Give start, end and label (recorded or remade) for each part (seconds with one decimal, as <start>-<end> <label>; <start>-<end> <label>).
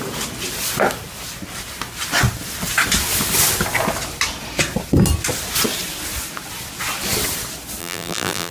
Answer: 0.0-7.8 recorded; 7.8-8.5 remade